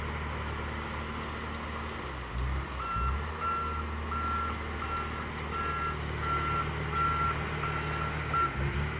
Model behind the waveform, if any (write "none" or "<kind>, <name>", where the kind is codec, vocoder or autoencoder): none